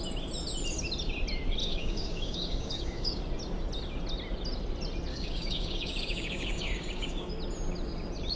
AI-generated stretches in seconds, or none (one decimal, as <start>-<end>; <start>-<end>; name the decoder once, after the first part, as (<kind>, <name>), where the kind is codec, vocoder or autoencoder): 1.6-3.2 (codec, DAC); 5.1-7.3